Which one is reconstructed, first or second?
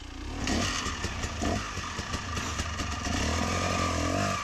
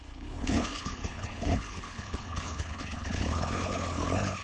second